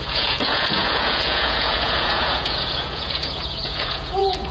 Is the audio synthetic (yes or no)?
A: yes